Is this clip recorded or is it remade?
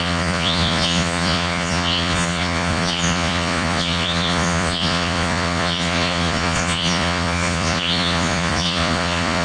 remade